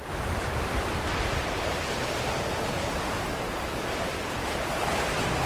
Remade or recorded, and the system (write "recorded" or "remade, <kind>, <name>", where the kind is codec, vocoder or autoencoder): recorded